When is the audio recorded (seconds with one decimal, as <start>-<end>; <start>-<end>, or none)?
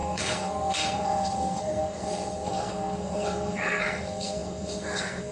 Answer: none